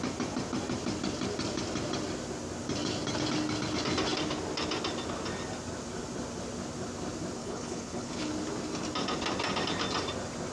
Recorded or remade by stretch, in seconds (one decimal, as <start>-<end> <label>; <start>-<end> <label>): 0.0-7.4 recorded; 7.4-8.3 remade; 8.3-10.5 recorded